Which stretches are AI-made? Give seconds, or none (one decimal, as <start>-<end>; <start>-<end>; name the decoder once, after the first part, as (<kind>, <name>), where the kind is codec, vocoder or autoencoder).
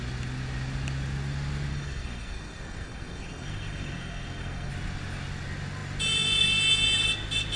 1.7-4.7 (codec, SNAC)